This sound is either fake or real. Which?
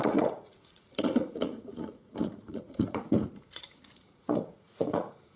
fake